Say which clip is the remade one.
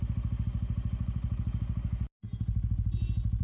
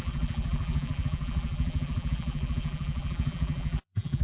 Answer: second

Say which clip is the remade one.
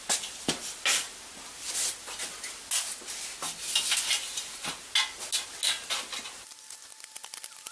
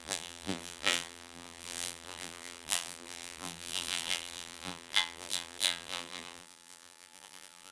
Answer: second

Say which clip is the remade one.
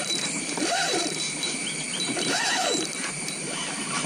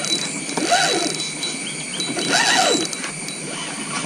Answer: first